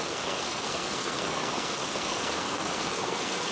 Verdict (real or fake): fake